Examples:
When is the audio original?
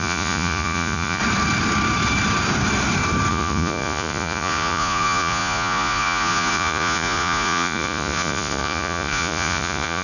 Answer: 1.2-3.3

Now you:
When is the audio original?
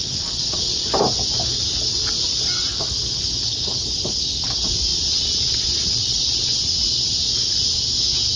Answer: 0.6-4.9; 7.2-8.4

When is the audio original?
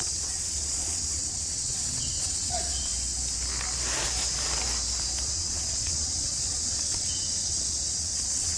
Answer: 2.9-5.2